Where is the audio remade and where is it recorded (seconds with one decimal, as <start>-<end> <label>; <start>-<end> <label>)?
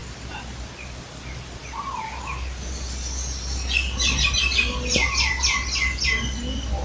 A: 0.0-6.8 recorded